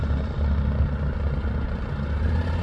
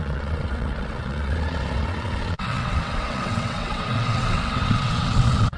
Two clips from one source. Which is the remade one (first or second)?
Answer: second